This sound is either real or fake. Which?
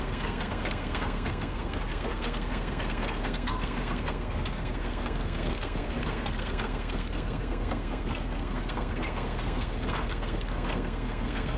fake